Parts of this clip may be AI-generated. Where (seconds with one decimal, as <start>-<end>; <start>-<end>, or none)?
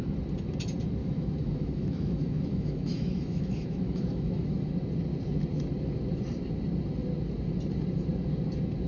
1.0-4.7